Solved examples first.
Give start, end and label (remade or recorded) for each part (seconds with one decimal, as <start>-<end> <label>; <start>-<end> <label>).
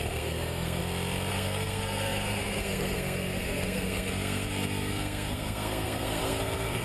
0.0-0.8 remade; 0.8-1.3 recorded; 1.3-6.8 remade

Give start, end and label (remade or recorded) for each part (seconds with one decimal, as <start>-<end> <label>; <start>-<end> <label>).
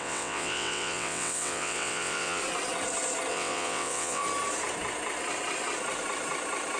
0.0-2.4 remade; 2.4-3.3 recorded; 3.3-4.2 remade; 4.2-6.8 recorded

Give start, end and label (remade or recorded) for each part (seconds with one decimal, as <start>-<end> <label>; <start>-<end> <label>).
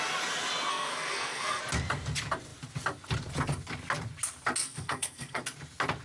0.0-0.7 recorded; 0.7-1.6 remade; 1.6-4.6 recorded; 4.6-5.4 remade; 5.4-6.0 recorded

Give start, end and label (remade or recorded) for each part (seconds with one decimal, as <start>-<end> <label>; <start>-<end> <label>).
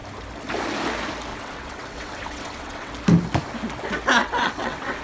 0.0-1.3 recorded; 1.3-2.9 remade; 2.9-4.2 recorded; 4.2-5.0 remade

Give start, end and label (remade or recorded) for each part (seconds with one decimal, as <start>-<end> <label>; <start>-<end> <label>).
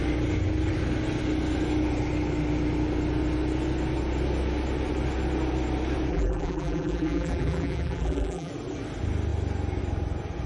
0.0-6.1 recorded; 6.1-8.5 remade; 8.5-10.5 recorded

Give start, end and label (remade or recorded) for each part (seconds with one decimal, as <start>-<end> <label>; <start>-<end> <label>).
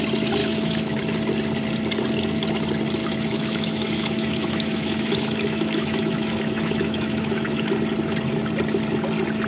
0.0-0.4 recorded; 0.4-1.0 remade; 1.0-3.0 recorded; 3.0-7.7 remade; 7.7-9.5 recorded